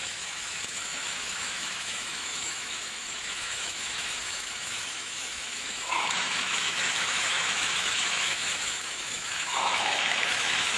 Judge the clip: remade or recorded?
remade